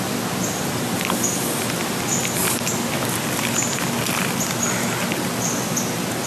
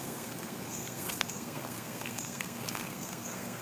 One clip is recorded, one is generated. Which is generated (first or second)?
second